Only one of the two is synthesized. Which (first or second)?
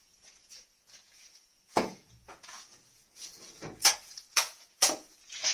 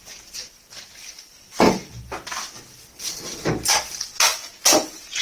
first